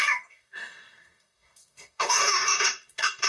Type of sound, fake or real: fake